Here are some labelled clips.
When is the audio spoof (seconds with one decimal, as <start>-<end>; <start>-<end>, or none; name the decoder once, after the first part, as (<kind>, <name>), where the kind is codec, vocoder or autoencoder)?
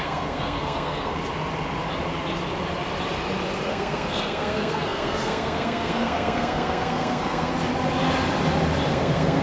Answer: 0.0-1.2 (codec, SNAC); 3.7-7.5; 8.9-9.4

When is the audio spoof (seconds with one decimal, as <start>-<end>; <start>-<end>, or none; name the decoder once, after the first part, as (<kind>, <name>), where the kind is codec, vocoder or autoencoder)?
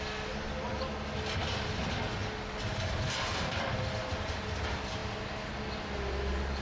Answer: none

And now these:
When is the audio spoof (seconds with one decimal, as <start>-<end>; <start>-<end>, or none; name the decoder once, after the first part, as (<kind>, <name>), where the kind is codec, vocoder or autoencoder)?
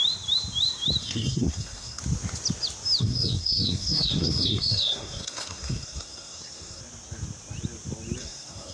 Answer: 1.0-2.0 (codec, SNAC); 3.0-6.8; 8.2-8.7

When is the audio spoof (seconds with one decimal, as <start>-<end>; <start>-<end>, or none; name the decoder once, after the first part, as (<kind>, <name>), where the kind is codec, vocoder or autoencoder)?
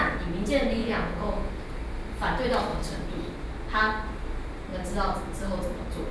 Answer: 0.8-1.5 (vocoder, Vocos)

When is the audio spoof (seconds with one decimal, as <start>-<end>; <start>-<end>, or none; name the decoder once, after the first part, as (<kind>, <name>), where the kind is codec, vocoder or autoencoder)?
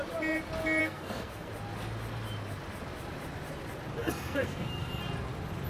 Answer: 0.8-1.5 (codec, SNAC); 4.0-5.0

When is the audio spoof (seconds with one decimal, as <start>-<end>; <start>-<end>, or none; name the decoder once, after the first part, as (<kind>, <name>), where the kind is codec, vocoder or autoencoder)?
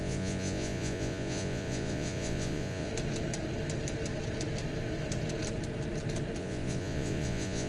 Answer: 0.0-2.9 (vocoder, Vocos); 6.4-7.7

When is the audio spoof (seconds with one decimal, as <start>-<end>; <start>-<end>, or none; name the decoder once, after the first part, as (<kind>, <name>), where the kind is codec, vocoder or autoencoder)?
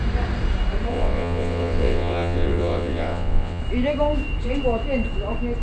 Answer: 0.9-3.6 (vocoder, WaveNeXt)